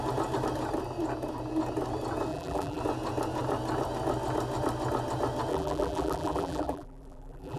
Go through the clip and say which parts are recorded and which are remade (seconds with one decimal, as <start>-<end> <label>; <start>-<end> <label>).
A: 0.0-2.3 recorded; 2.3-2.8 remade; 2.8-5.5 recorded; 5.5-7.6 remade